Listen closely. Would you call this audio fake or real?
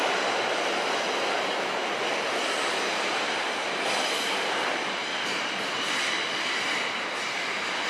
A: real